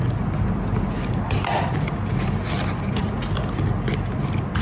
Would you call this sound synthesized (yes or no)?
no